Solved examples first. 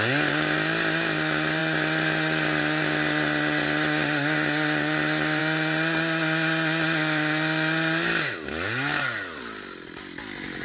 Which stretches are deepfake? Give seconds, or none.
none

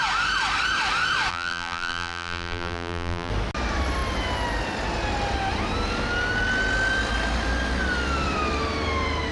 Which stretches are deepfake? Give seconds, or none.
1.3-3.3 (vocoder, BigVGAN v2)

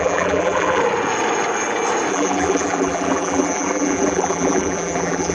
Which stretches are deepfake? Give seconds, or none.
0.0-0.8 (vocoder, BigVGAN v2); 2.1-5.3

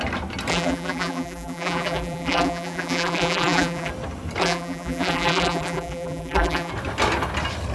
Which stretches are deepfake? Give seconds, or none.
0.5-3.9 (vocoder, BigVGAN v2); 4.4-6.7

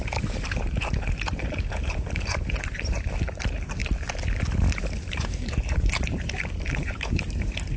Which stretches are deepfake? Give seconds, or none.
0.0-3.8 (vocoder, BigVGAN v2); 5.1-7.8

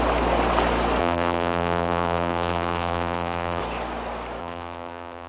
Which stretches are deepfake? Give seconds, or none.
1.0-3.6 (vocoder, BigVGAN v2); 4.4-5.3